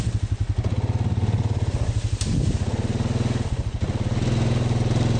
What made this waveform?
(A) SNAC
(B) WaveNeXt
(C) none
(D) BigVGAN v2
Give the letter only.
C